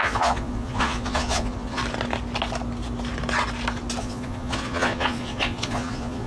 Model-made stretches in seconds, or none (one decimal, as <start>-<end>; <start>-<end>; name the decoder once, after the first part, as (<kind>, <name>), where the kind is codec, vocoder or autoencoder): 0.0-1.8 (vocoder, Vocos); 4.0-6.3